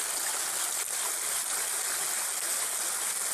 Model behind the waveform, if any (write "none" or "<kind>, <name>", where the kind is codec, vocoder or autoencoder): none